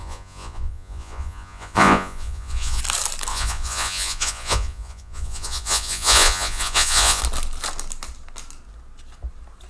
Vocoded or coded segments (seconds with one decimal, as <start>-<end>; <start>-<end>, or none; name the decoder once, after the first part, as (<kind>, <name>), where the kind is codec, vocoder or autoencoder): 0.0-2.8 (vocoder, Vocos); 3.3-7.2